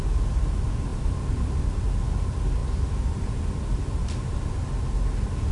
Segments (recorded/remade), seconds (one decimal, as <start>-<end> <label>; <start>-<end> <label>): 0.0-5.5 recorded